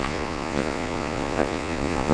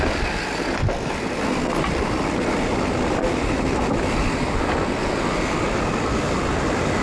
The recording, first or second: second